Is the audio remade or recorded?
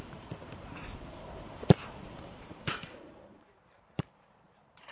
remade